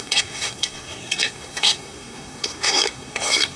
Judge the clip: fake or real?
fake